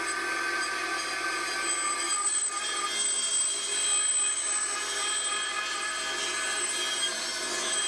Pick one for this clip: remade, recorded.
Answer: recorded